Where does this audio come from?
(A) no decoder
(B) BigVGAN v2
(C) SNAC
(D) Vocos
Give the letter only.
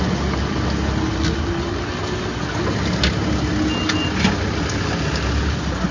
A